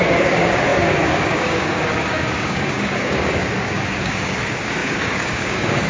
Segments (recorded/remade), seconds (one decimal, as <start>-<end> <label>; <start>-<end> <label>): 0.0-5.9 remade